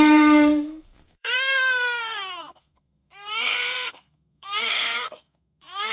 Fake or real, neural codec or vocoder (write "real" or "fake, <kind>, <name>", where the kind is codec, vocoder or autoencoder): fake, codec, SNAC